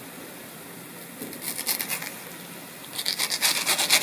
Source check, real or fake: real